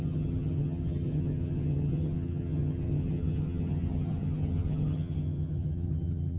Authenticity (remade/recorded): remade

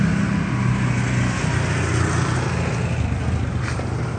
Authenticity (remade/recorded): recorded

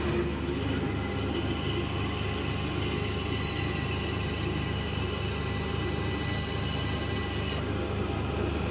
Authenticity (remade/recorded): recorded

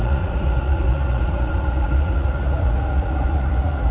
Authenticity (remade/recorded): remade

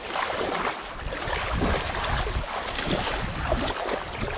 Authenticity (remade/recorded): recorded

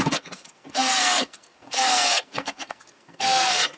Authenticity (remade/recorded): remade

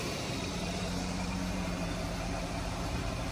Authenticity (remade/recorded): remade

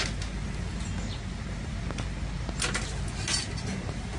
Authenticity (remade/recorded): recorded